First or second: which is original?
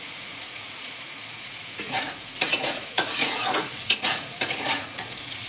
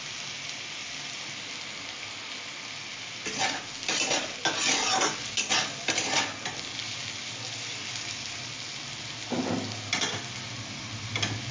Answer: second